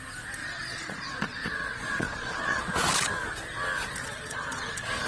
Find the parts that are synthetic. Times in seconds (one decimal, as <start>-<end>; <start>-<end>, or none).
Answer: 0.4-2.6; 4.0-5.1